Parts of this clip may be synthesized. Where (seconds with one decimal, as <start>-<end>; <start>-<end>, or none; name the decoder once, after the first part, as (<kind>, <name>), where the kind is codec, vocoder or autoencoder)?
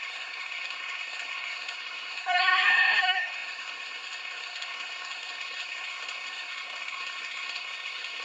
0.0-8.2 (codec, SNAC)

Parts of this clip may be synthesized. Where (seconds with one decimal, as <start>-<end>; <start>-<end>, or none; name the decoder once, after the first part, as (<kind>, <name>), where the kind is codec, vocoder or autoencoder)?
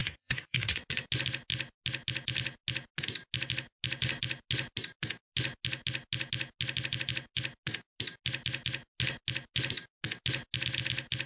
0.0-0.8 (codec, SNAC)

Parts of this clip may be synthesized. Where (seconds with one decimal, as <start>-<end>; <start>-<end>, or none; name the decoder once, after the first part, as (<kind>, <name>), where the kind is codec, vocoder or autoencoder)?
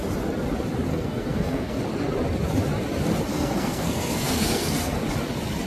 0.9-1.8 (codec, SNAC); 3.3-5.0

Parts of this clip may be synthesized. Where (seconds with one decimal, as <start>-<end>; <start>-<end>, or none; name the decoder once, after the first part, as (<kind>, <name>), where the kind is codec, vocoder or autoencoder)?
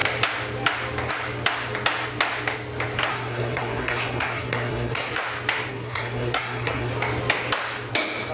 3.1-5.2 (codec, SNAC); 5.7-6.9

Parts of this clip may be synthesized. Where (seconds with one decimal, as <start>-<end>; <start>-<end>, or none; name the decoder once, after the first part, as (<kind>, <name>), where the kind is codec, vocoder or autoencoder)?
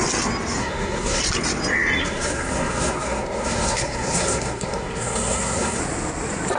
0.6-1.2 (codec, SNAC); 2.0-5.8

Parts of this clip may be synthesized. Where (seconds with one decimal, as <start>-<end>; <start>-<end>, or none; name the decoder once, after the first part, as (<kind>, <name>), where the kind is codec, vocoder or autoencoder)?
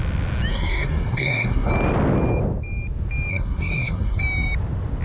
0.5-1.7 (codec, SNAC); 3.3-4.2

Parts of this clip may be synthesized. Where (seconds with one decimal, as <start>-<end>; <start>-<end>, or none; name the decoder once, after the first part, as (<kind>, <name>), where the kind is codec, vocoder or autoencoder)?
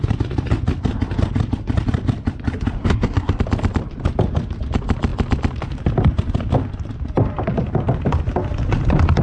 2.8-3.4 (codec, SNAC)